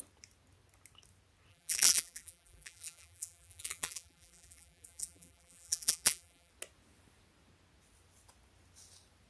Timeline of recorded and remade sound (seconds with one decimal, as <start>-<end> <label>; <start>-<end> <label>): 0.0-1.5 recorded; 1.5-6.5 remade; 6.5-9.3 recorded

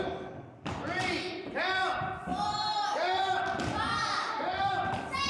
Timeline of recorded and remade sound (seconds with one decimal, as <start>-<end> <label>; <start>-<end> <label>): 0.0-5.3 remade

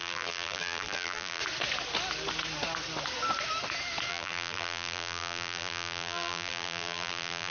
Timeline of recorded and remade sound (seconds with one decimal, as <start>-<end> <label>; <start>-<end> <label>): 0.0-1.4 remade; 1.4-4.1 recorded; 4.1-7.5 remade

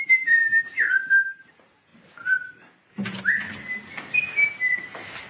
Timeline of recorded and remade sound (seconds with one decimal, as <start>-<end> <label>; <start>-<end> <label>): 0.0-1.9 remade; 1.9-5.3 recorded

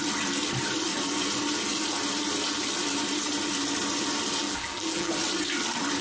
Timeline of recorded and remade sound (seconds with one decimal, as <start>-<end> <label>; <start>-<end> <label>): 0.0-4.4 recorded; 4.4-5.1 remade; 5.1-6.0 recorded